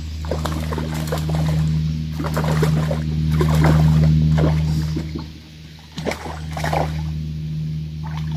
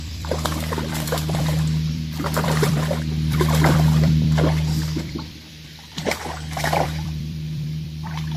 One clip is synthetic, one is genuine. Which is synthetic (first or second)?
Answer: second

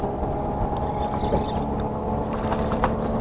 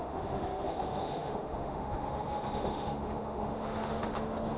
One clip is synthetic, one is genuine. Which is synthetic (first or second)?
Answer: second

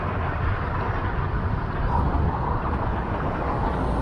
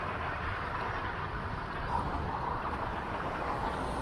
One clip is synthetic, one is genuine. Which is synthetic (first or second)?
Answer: second